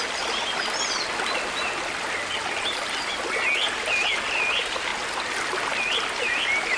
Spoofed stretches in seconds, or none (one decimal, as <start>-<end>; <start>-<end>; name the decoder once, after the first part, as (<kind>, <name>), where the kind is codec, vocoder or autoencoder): none